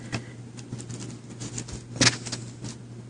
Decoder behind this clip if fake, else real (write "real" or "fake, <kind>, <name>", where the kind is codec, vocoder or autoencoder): real